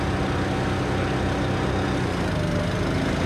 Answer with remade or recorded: recorded